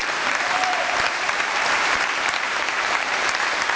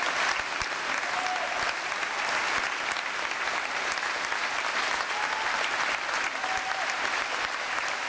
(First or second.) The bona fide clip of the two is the second